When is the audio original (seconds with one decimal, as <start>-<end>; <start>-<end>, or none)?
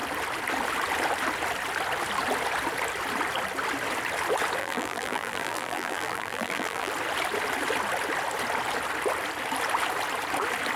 0.0-4.6; 6.9-10.8